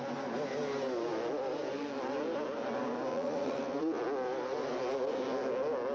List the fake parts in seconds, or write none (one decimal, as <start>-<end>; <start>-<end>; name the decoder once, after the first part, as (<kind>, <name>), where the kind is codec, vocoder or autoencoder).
3.1-4.0 (vocoder, Vocos)